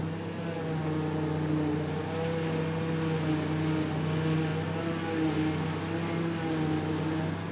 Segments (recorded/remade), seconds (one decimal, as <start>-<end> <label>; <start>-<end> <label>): 0.0-7.5 recorded